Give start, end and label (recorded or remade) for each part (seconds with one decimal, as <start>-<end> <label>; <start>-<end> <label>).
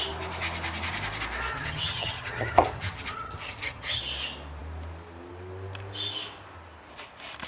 0.0-1.5 recorded; 1.5-4.0 remade; 4.0-7.5 recorded